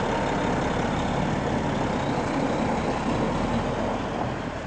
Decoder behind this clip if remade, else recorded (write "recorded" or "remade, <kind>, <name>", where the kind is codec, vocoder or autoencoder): recorded